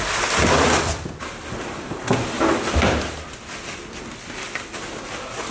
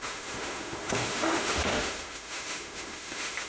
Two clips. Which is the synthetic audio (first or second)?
second